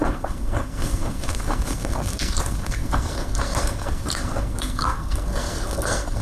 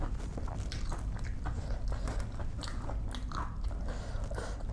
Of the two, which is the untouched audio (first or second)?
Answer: second